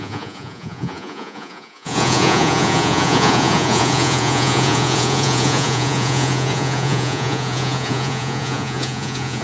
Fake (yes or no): yes